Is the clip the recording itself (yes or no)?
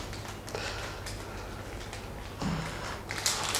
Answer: yes